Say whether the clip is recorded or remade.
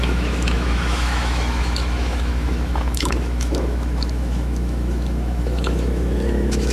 remade